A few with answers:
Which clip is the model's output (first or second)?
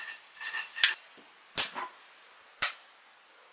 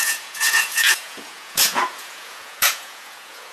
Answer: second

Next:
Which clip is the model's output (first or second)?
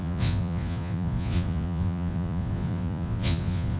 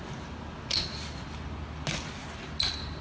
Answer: first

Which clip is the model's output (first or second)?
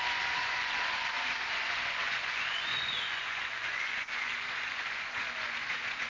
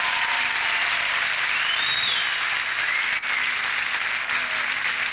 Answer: first